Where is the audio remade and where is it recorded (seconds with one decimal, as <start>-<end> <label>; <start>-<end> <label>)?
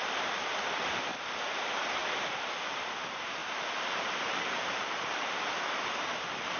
0.0-1.1 remade; 1.1-1.6 recorded; 1.6-2.0 remade; 2.0-2.7 recorded; 2.7-6.6 remade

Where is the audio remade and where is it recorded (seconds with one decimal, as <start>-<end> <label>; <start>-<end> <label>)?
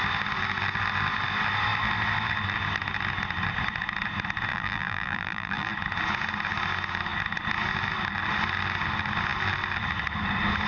0.0-4.5 recorded; 4.5-5.7 remade; 5.7-10.7 recorded